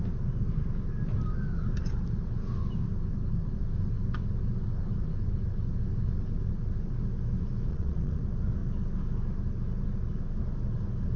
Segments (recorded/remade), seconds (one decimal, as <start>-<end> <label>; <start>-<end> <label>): 0.0-7.7 recorded; 7.7-8.2 remade; 8.2-11.2 recorded